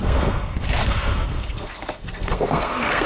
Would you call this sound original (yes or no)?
no